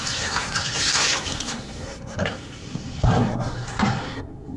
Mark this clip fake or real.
fake